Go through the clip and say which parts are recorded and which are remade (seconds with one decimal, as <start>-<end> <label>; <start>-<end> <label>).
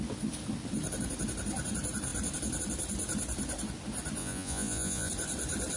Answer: 0.0-4.2 recorded; 4.2-5.1 remade; 5.1-5.8 recorded